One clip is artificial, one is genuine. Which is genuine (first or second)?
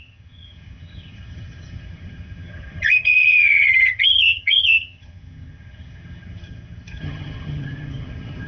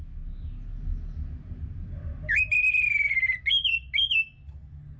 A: second